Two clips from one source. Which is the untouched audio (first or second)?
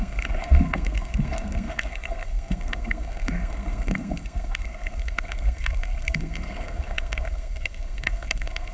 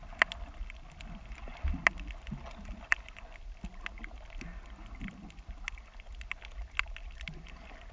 second